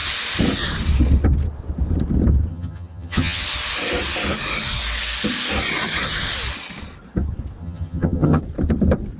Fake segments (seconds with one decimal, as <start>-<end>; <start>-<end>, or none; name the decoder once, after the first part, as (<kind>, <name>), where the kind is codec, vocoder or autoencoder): 2.5-3.4 (vocoder, HiFi-GAN); 7.6-8.4